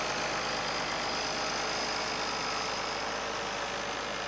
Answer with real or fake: real